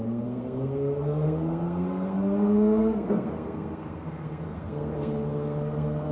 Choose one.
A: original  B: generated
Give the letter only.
B